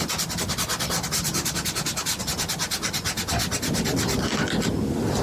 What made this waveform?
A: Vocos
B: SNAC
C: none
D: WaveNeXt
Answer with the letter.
C